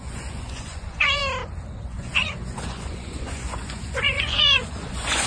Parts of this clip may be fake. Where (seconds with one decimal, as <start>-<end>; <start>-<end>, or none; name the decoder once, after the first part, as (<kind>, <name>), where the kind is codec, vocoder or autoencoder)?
0.0-1.2 (vocoder, Vocos); 1.7-5.3